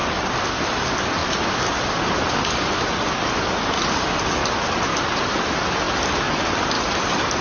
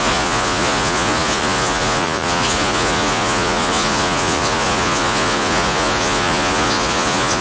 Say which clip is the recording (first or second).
first